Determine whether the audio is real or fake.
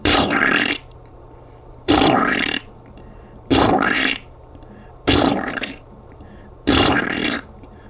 fake